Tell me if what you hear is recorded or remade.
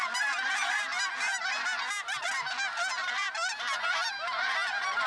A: recorded